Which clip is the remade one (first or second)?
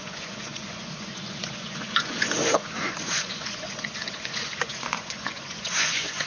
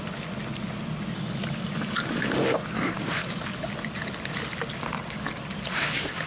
first